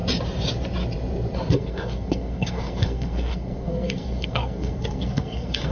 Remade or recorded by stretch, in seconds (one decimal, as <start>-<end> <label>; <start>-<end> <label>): 0.0-1.5 recorded; 1.5-5.7 remade